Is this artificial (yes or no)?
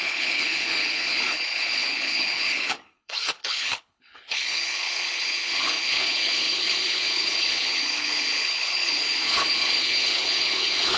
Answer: yes